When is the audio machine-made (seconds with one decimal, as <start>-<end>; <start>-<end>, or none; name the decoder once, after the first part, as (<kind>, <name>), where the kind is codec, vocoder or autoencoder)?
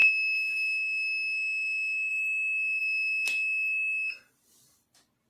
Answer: 0.0-2.1 (autoencoder, DAC-VAE)